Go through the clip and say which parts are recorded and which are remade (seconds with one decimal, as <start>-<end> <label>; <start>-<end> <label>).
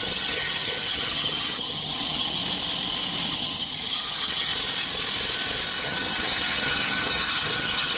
0.0-2.4 remade; 2.4-3.3 recorded; 3.3-4.5 remade; 4.5-5.8 recorded; 5.8-8.0 remade